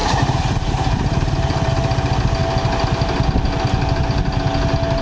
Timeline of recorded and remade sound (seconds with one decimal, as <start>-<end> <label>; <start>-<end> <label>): 0.0-1.7 remade; 1.7-5.0 recorded